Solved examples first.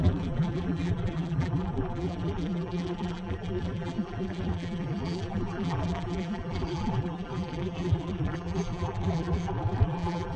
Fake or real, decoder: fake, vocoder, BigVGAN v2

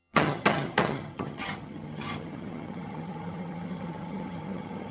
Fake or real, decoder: fake, vocoder, HiFi-GAN